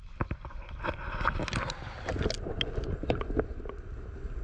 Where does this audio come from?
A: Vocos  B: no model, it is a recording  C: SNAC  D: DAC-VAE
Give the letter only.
B